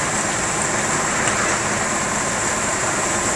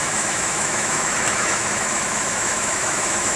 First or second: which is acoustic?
first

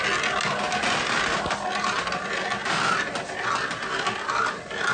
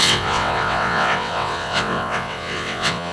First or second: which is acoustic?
first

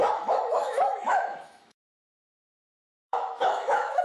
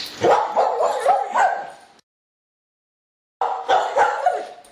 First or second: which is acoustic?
second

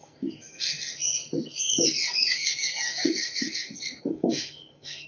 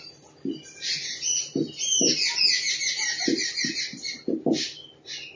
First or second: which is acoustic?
second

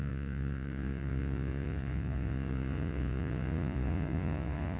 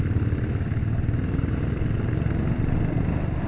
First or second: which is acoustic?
second